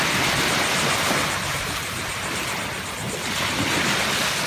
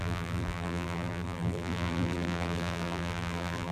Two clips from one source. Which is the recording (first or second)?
first